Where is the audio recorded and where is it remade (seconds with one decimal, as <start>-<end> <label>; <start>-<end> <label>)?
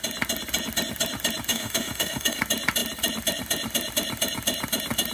0.0-1.5 recorded; 1.5-2.4 remade; 2.4-5.1 recorded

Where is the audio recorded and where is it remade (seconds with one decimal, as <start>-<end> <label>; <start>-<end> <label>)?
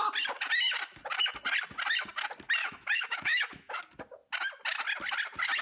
0.0-2.6 recorded; 2.6-3.8 remade; 3.8-5.6 recorded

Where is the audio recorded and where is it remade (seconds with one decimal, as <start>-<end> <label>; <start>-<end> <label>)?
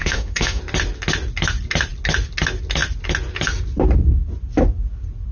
0.0-0.6 remade; 0.6-5.3 recorded